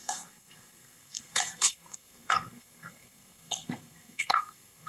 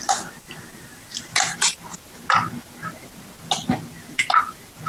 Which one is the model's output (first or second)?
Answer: first